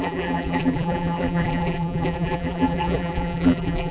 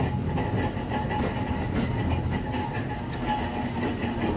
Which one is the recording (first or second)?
second